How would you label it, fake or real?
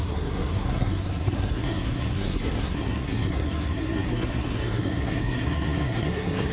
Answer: fake